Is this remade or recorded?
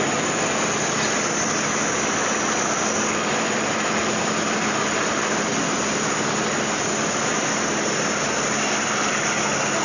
recorded